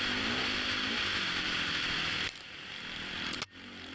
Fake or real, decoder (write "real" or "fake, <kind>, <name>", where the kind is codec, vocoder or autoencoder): real